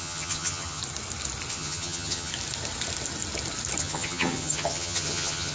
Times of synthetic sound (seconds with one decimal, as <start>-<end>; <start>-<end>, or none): 0.0-0.8; 1.5-2.3; 3.8-5.5